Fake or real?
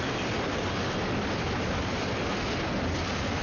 real